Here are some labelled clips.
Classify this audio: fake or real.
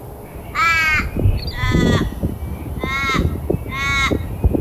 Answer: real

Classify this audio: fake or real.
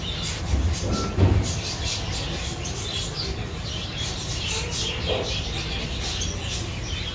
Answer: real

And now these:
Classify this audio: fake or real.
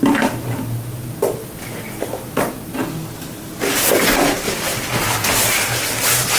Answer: real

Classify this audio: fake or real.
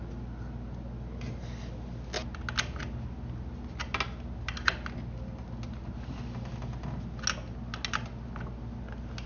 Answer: real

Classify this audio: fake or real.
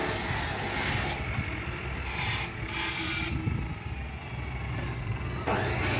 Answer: real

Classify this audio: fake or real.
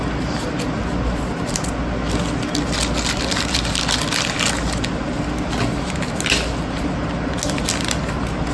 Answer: real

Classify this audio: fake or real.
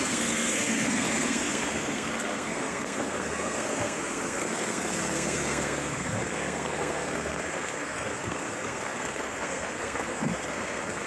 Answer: fake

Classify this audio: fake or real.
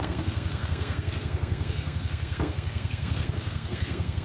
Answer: fake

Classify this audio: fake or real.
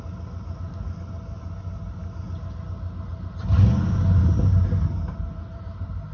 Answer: real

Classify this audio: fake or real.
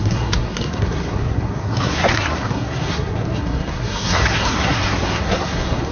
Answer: fake